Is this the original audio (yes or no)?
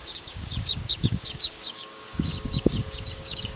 no